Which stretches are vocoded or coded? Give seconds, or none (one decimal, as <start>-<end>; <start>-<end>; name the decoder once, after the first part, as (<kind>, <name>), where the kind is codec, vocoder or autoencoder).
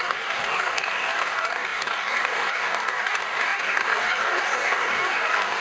0.0-5.6 (codec, DAC)